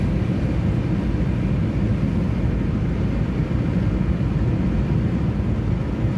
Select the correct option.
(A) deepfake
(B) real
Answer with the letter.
B